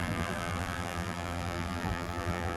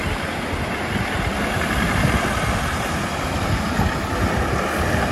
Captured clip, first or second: second